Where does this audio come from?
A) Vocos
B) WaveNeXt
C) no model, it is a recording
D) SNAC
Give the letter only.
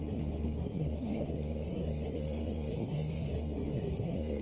D